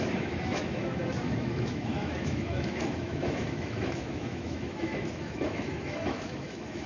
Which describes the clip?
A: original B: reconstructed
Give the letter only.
B